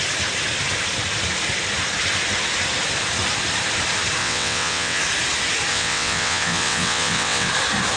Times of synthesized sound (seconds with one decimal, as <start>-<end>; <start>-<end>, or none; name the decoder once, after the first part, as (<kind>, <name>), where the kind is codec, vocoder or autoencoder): 4.2-5.0 (vocoder, WaveNeXt); 5.7-7.5